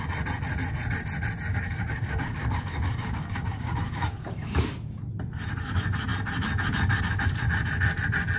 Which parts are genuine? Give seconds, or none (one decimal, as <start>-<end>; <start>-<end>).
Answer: 0.0-1.5; 4.7-8.4